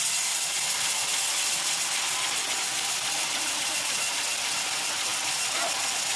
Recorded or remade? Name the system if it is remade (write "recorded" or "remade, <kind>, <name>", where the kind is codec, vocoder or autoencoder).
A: recorded